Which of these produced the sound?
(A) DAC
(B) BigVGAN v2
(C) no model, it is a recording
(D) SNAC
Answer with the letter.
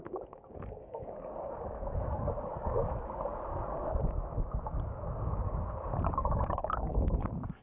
A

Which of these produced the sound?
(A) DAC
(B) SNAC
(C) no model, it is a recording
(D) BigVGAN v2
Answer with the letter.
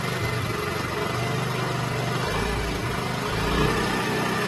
C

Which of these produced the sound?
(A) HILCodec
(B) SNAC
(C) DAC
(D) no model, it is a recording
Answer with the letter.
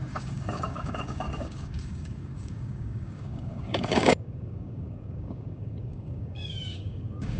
C